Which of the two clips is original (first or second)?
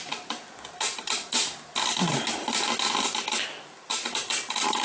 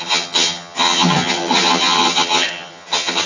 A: first